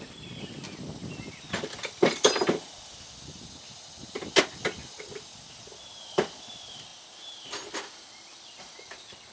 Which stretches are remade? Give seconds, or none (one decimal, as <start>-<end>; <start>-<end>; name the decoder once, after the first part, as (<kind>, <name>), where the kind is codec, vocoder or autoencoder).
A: none